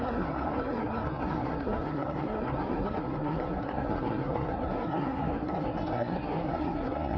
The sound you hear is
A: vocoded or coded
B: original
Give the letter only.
A